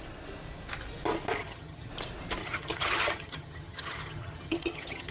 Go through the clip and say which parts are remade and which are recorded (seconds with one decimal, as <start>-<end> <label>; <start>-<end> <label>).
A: 0.0-1.4 recorded; 1.4-1.9 remade; 1.9-2.4 recorded; 2.4-5.1 remade